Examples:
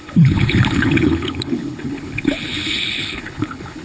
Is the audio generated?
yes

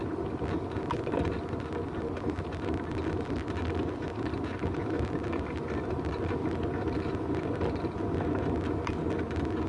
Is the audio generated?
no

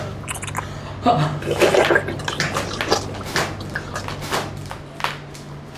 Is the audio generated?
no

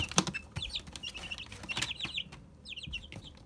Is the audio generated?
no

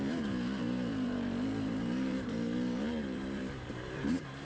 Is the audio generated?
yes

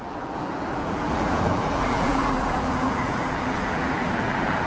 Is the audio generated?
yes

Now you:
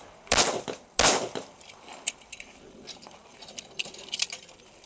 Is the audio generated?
no